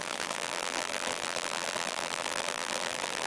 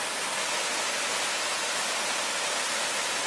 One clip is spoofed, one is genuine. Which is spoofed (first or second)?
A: first